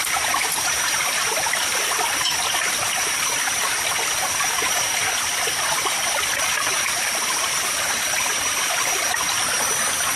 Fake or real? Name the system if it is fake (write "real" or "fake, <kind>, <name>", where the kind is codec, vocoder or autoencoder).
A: fake, vocoder, BigVGAN v2